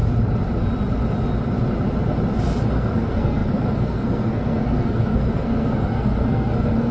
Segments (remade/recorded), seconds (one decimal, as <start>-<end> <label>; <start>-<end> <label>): 0.0-2.7 recorded; 2.7-6.9 remade